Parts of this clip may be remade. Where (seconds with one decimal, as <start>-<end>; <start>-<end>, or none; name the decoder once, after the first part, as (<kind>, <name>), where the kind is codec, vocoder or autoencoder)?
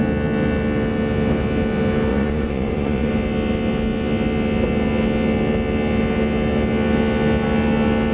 2.1-3.1 (vocoder, Vocos)